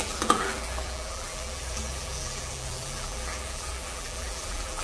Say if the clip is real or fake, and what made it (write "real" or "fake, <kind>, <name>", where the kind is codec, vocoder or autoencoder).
fake, vocoder, BigVGAN v2